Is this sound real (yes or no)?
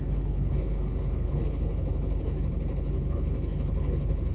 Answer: no